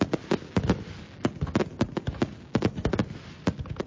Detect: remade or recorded recorded